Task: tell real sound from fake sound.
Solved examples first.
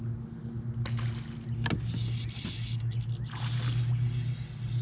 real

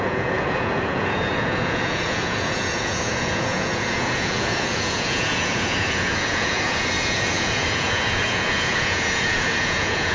fake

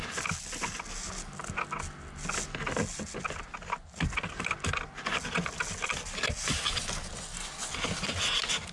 real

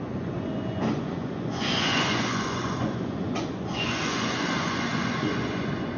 fake